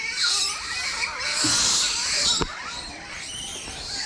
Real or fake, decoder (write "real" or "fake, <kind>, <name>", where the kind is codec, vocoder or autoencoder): real